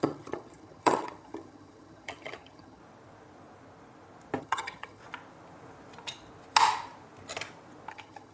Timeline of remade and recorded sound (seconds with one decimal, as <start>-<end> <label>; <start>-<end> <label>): 0.0-2.8 remade; 2.8-4.4 recorded; 4.4-5.0 remade; 5.0-7.9 recorded; 7.9-8.3 remade